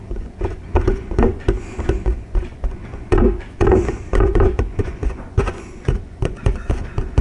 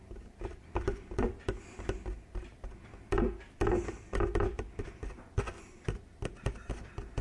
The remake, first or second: first